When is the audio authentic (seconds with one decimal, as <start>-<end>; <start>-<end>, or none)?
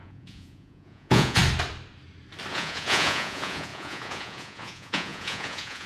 1.4-2.5